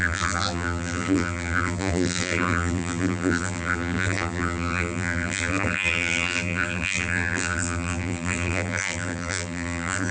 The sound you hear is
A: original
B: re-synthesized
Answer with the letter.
B